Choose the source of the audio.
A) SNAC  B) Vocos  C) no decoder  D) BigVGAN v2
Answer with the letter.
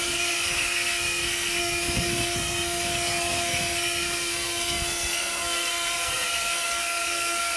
A